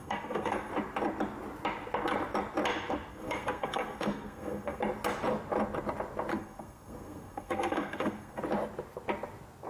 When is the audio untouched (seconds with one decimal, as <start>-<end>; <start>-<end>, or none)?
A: 0.7-3.1; 4.8-6.3; 8.4-9.7